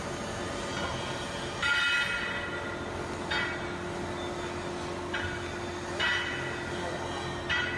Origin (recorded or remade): recorded